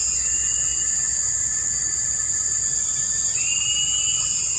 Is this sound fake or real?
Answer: real